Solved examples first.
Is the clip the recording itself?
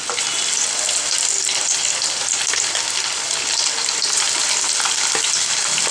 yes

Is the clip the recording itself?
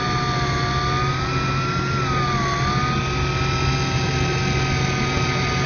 yes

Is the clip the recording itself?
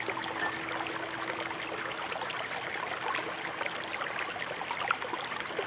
yes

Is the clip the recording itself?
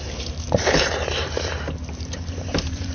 no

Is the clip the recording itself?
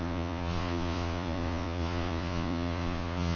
no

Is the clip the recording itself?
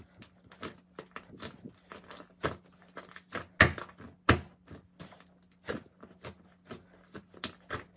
yes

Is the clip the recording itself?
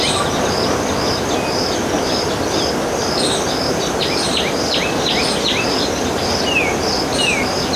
yes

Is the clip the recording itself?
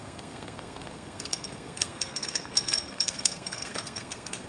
no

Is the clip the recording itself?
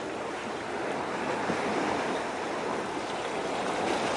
yes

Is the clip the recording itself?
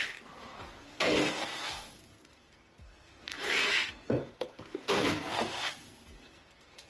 no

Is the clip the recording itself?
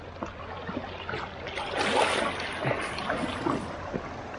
yes